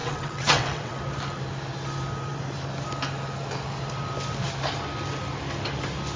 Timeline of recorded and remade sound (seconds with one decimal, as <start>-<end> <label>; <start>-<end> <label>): 0.0-1.0 remade; 1.0-6.2 recorded